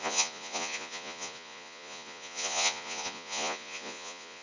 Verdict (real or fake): fake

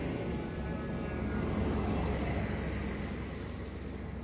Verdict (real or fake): real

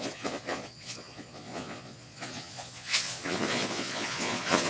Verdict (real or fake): fake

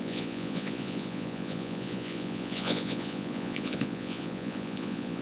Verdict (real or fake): fake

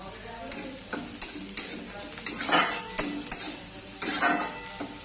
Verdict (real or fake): real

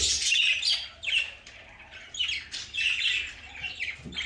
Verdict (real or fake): real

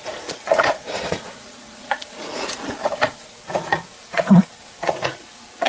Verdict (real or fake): fake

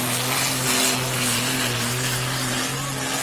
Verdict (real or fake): real